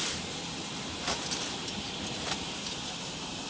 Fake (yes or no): no